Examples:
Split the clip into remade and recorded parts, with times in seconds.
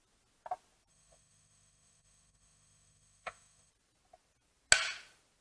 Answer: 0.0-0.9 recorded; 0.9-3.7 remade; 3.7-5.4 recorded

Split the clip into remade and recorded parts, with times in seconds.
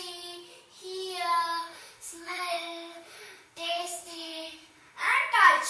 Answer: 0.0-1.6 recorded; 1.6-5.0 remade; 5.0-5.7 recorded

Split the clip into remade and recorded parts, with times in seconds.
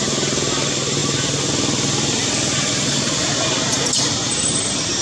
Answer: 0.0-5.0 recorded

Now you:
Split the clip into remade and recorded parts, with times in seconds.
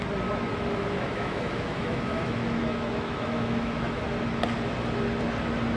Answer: 0.0-0.5 recorded; 0.5-4.0 remade; 4.0-5.8 recorded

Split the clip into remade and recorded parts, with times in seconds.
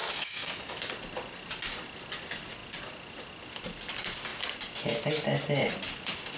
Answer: 0.0-0.8 remade; 0.8-6.4 recorded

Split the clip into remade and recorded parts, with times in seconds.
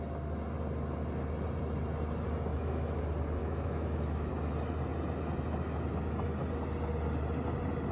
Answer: 0.0-2.5 recorded; 2.5-3.0 remade; 3.0-3.4 recorded; 3.4-4.3 remade; 4.3-7.9 recorded